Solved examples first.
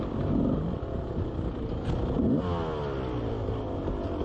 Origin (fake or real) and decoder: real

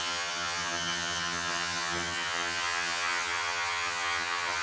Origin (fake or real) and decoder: fake, vocoder, HiFi-GAN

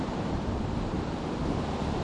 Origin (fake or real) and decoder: fake, vocoder, BigVGAN v2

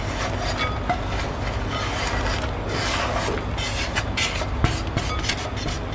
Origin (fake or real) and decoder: real